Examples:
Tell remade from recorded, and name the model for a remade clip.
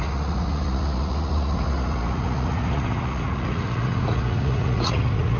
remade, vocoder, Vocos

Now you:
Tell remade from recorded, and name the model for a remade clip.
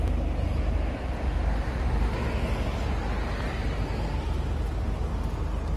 recorded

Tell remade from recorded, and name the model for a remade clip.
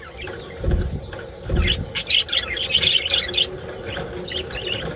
recorded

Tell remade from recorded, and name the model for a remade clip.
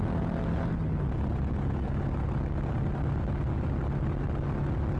recorded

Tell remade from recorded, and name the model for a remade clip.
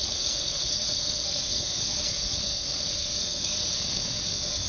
remade, codec, SNAC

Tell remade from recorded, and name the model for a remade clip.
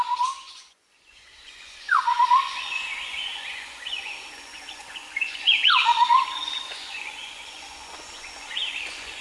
remade, vocoder, Vocos